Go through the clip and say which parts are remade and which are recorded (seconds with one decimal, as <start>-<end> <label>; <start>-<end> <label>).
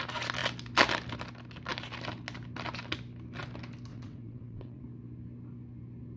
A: 0.0-3.9 recorded; 3.9-4.8 remade; 4.8-6.2 recorded